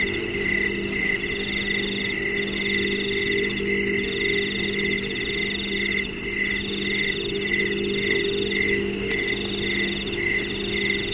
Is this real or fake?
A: real